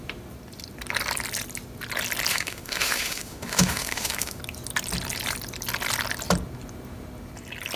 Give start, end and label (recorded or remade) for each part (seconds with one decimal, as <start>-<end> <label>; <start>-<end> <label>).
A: 0.0-2.3 recorded; 2.3-4.4 remade; 4.4-7.8 recorded